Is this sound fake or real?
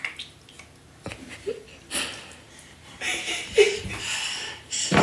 real